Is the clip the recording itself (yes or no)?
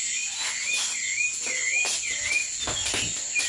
yes